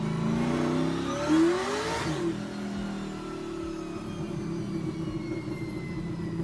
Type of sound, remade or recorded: recorded